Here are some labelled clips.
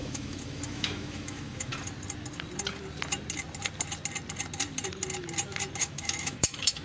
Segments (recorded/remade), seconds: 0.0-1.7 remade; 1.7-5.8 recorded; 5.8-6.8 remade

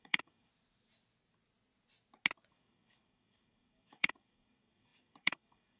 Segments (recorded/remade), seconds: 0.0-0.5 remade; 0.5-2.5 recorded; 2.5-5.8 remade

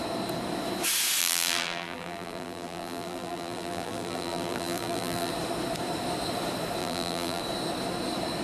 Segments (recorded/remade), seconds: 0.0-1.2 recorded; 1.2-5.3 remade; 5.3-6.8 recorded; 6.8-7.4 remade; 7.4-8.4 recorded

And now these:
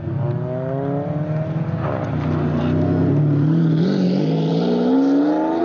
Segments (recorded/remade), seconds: 0.0-5.6 recorded

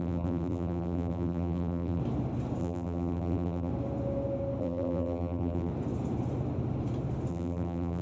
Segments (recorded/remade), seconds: 0.0-2.0 remade; 2.0-2.6 recorded; 2.6-3.7 remade; 3.7-4.6 recorded; 4.6-5.7 remade; 5.7-7.3 recorded; 7.3-8.0 remade

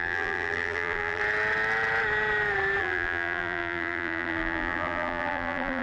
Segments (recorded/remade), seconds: 0.0-1.2 remade; 1.2-2.8 recorded; 2.8-5.8 remade